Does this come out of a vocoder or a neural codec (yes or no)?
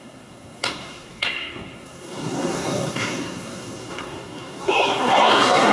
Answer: yes